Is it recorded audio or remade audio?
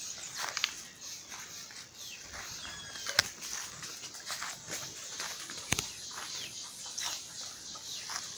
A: recorded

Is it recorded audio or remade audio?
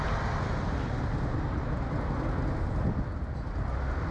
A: recorded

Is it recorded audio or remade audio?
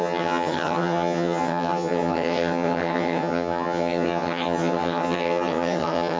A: remade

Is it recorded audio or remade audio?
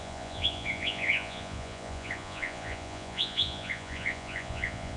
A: remade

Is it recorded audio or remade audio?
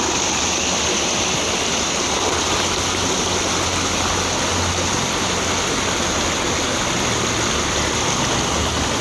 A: recorded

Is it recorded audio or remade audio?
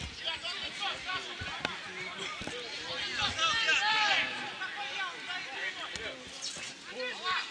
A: recorded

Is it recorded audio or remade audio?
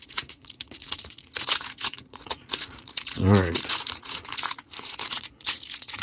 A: remade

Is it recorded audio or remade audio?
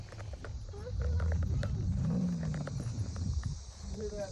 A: remade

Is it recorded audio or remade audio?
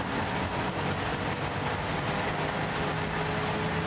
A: recorded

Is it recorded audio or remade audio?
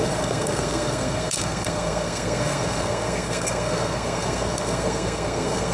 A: remade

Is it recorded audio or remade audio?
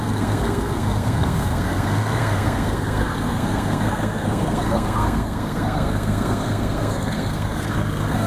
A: remade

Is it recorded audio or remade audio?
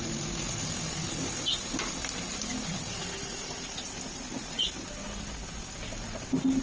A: recorded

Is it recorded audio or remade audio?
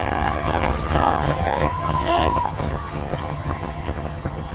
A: remade